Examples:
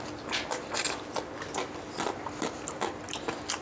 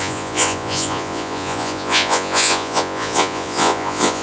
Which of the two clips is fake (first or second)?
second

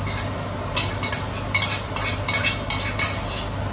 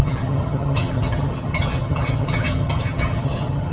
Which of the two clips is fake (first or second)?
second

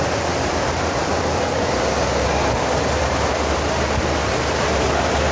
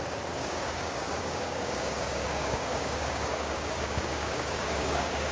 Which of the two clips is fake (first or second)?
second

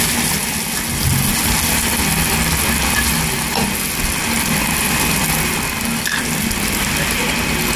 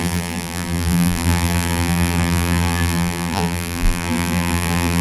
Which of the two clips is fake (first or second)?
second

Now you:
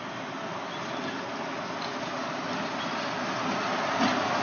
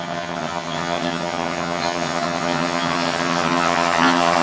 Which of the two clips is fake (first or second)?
second